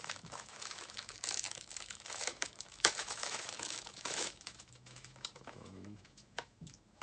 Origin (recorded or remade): remade